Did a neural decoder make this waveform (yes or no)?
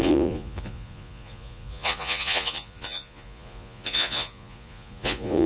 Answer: yes